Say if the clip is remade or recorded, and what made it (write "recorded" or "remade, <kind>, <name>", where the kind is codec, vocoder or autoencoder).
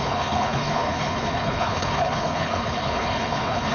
remade, codec, HILCodec